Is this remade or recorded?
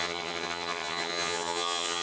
remade